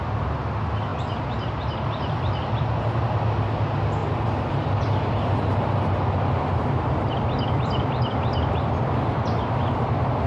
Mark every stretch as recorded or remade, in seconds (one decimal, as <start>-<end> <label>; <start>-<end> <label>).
0.0-4.0 recorded; 4.0-8.7 remade; 8.7-10.3 recorded

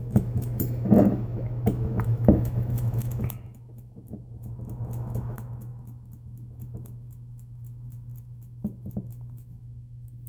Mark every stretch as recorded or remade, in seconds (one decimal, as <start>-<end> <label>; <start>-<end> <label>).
0.0-10.3 remade

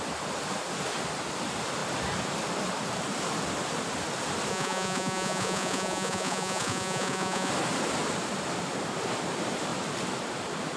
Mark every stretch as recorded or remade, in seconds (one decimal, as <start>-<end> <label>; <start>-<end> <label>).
0.0-4.5 recorded; 4.5-7.5 remade; 7.5-10.8 recorded

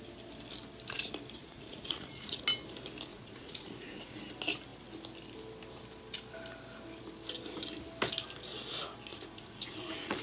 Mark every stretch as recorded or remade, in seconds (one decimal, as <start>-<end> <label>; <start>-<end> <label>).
0.0-1.4 recorded; 1.4-2.4 remade; 2.4-3.1 recorded; 3.1-4.2 remade; 4.2-9.1 recorded; 9.1-10.2 remade